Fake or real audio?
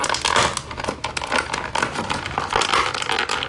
real